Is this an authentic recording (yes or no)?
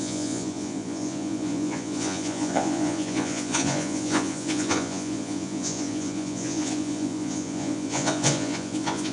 no